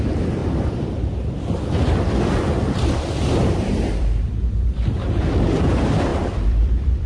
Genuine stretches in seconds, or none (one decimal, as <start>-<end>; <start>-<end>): none